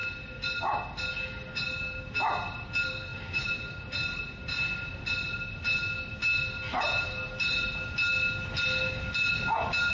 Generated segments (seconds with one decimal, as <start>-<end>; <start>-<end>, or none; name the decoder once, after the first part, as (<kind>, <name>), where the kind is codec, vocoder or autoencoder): none